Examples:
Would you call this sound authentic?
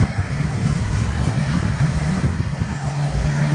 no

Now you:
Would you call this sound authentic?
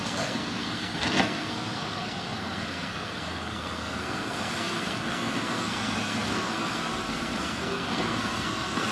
no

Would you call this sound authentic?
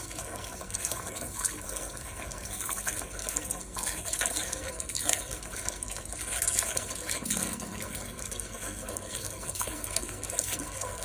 no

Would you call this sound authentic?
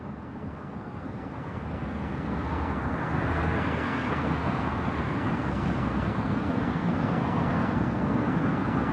no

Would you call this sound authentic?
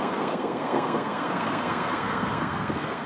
no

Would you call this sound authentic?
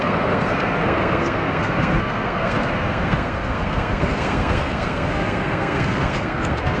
no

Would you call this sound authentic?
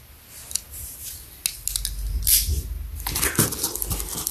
yes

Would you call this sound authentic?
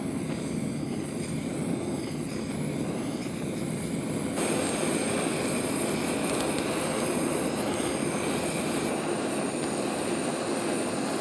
yes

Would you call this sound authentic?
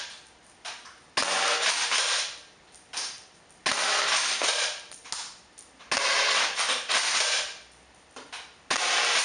yes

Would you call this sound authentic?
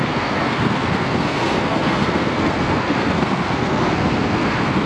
no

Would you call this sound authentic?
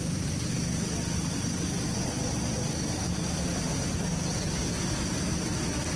yes